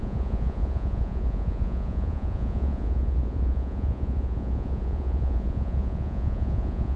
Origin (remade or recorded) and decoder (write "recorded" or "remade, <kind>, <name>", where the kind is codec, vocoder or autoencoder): remade, vocoder, Vocos